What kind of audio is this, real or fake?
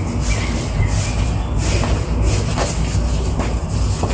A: real